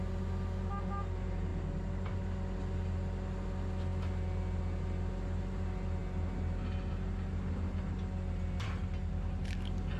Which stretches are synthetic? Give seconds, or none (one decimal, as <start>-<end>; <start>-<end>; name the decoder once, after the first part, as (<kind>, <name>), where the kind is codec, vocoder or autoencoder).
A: none